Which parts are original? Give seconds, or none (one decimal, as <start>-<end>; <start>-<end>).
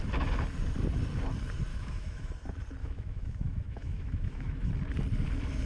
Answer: 0.0-1.7; 2.3-2.8; 4.7-5.7